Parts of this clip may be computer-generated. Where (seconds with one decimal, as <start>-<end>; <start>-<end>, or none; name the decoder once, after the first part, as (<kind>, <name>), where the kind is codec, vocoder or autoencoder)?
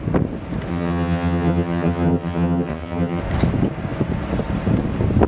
0.7-3.2 (vocoder, HiFi-GAN)